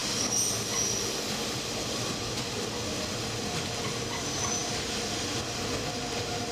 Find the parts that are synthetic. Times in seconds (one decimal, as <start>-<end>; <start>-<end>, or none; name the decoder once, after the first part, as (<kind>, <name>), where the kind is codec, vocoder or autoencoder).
none